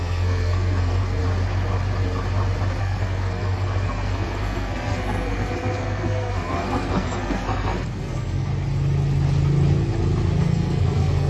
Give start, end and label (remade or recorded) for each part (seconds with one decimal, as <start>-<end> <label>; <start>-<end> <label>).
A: 0.0-1.2 remade; 1.2-2.8 recorded; 2.8-8.5 remade; 8.5-10.4 recorded; 10.4-11.3 remade